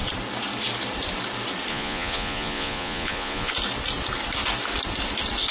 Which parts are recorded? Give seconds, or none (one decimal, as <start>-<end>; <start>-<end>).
0.0-1.7; 3.5-5.5